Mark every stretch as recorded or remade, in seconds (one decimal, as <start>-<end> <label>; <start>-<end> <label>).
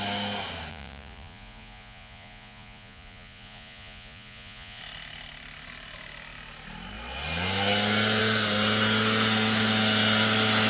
0.0-0.7 recorded; 0.7-4.8 remade; 4.8-10.7 recorded